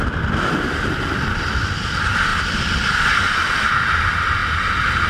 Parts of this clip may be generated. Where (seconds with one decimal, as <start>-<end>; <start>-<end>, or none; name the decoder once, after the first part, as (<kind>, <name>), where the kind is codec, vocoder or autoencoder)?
0.0-4.4 (vocoder, BigVGAN v2)